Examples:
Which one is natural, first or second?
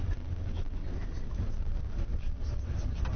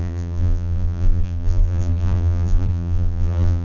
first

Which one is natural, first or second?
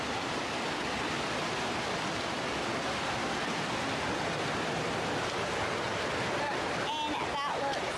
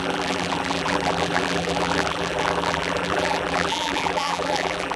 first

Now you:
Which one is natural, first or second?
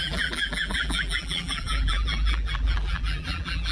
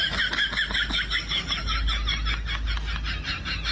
second